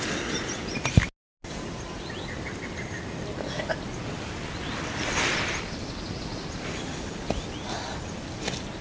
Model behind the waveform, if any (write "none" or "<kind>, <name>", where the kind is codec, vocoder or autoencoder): none